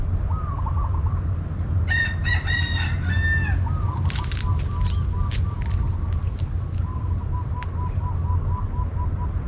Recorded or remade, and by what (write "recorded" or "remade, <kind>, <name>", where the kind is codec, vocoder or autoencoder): recorded